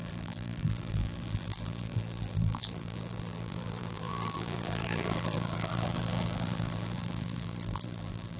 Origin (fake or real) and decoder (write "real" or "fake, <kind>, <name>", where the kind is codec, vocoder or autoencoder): fake, vocoder, BigVGAN v2